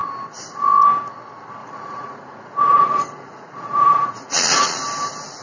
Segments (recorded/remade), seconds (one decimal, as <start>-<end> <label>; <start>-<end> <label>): 0.0-1.6 recorded; 1.6-4.8 remade; 4.8-5.4 recorded